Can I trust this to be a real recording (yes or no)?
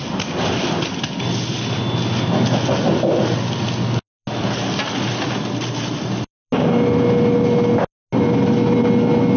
yes